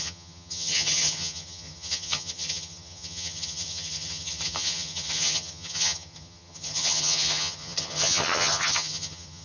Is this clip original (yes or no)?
no